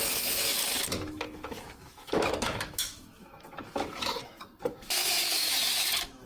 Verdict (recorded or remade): remade